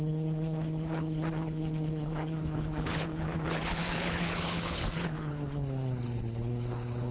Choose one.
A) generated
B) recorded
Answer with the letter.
A